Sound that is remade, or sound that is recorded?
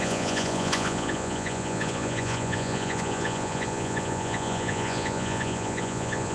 remade